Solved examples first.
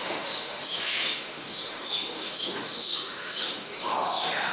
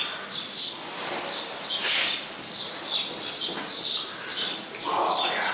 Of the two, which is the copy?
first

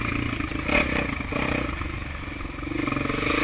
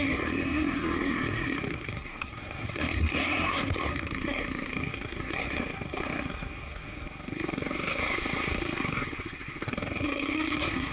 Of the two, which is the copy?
second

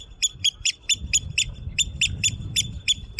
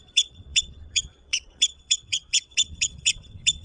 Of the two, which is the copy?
second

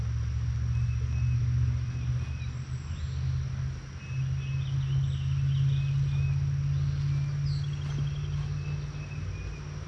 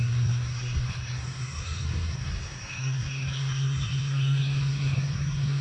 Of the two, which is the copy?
second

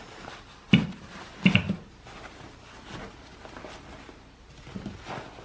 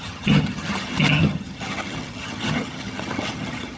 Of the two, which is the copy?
second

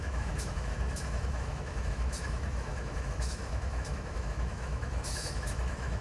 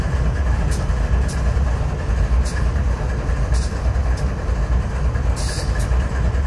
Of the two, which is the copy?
first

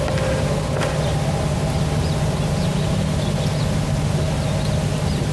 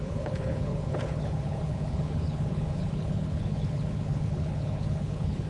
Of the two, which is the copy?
second